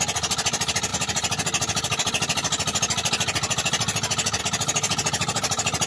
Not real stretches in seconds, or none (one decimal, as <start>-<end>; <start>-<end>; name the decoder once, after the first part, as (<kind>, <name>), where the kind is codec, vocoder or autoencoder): none